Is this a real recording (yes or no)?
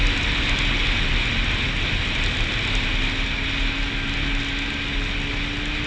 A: yes